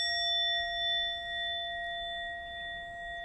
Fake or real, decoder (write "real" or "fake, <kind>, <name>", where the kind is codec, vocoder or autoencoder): real